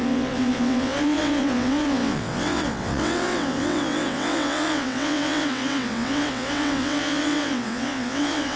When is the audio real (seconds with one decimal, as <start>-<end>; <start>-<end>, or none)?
none